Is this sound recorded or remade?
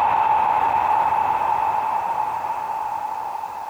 recorded